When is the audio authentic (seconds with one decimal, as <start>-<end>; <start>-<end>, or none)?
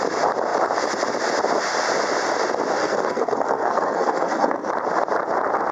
0.0-2.8; 4.7-5.7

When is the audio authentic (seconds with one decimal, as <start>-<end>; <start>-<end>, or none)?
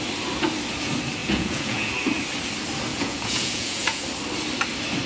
0.0-1.2; 1.9-2.9; 4.0-5.1